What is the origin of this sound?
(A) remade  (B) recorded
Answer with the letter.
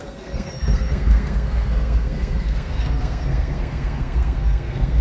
A